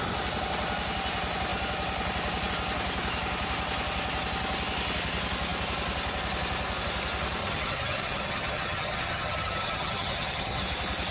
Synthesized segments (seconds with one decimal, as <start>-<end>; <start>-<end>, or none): 7.4-10.6